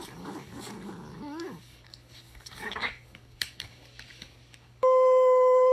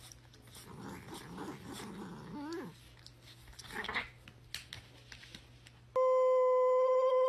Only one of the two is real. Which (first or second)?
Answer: second